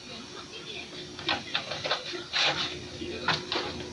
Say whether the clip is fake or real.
real